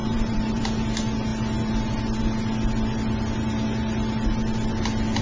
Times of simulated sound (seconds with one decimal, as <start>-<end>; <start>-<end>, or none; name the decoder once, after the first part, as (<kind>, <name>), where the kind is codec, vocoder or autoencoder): 0.0-0.6 (vocoder, BigVGAN v2)